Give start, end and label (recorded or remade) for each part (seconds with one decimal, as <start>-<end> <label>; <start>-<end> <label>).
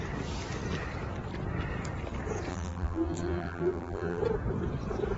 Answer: 0.0-2.5 recorded; 2.5-4.2 remade; 4.2-5.2 recorded